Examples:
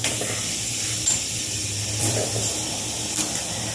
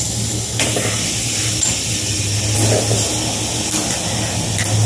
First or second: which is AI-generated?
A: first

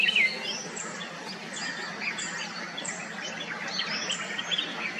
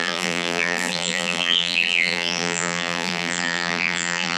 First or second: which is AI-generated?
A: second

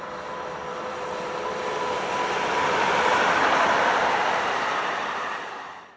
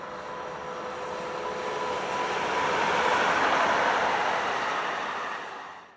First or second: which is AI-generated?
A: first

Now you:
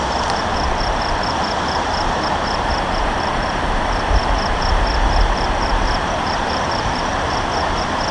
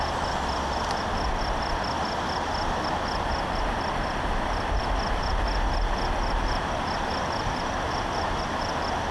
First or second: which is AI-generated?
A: first